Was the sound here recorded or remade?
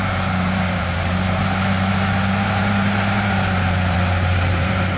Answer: remade